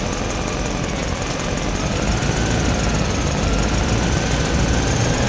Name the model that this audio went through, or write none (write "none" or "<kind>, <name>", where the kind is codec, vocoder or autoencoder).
none